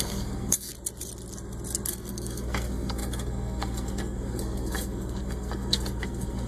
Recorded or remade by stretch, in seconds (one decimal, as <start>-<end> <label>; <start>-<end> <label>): 0.0-0.7 remade; 0.7-1.9 recorded; 1.9-6.5 remade